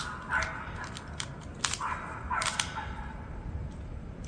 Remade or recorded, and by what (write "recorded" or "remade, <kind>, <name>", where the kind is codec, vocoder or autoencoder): recorded